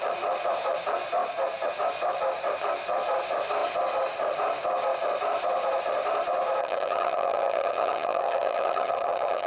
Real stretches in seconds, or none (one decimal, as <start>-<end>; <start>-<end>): 0.0-6.6